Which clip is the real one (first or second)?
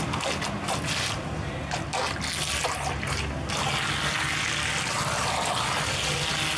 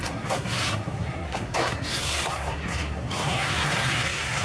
first